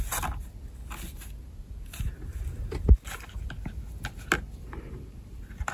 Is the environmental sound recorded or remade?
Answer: recorded